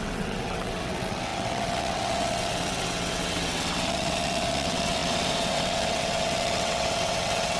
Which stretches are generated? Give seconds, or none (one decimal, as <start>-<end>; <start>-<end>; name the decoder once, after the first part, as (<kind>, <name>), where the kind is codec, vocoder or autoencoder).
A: 0.0-7.6 (vocoder, WaveNeXt)